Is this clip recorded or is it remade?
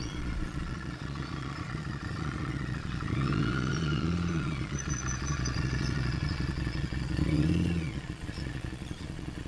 remade